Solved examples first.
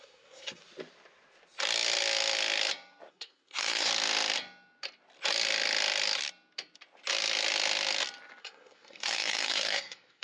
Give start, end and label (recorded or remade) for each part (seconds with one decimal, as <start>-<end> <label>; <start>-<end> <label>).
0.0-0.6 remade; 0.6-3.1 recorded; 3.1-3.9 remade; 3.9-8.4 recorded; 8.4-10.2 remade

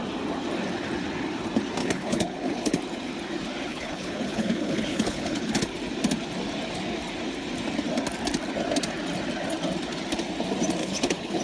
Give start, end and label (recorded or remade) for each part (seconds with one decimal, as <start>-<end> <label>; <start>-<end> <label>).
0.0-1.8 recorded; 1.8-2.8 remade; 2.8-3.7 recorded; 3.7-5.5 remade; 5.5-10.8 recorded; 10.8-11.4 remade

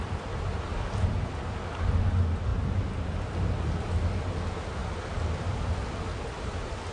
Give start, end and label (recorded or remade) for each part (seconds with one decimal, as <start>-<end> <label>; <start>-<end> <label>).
0.0-6.9 recorded

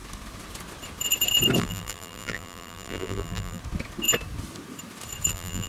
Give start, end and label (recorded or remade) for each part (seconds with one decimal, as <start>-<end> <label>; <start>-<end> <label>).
0.0-1.6 recorded; 1.6-3.6 remade; 3.6-5.3 recorded; 5.3-5.7 remade

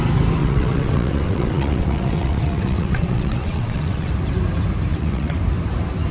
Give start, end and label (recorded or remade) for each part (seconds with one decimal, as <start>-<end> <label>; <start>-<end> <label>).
0.0-0.4 recorded; 0.4-4.1 remade; 4.1-4.9 recorded; 4.9-5.4 remade; 5.4-6.1 recorded

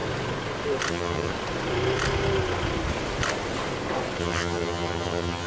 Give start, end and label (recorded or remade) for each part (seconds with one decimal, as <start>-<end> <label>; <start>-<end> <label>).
0.0-0.9 recorded; 0.9-1.3 remade; 1.3-4.2 recorded; 4.2-5.5 remade